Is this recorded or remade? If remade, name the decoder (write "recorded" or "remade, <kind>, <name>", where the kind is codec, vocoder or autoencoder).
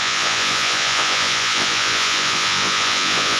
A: remade, vocoder, Vocos